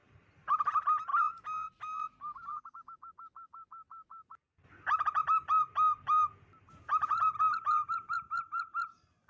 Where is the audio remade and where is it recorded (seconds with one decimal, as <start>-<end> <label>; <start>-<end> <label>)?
0.0-1.1 recorded; 1.1-1.7 remade; 1.7-9.3 recorded